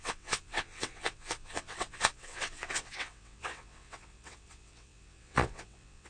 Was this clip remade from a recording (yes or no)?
yes